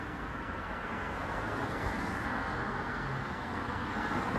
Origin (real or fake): fake